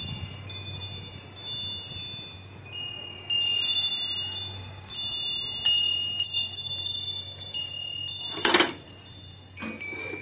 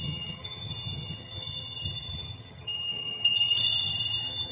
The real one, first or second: first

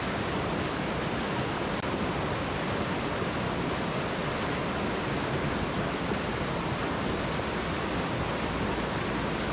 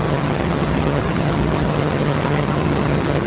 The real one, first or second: first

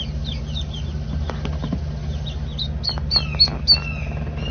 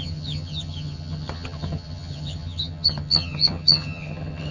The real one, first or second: first